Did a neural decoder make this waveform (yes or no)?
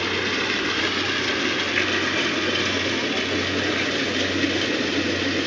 no